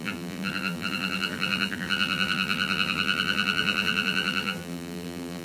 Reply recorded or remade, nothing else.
remade